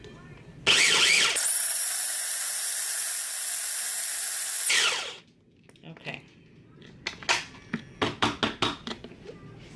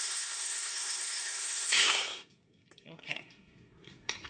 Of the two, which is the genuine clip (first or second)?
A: first